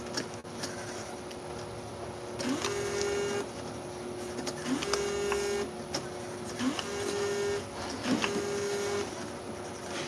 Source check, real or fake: real